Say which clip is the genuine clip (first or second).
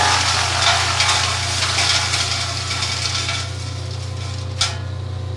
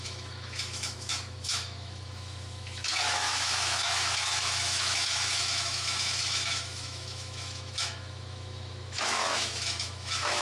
first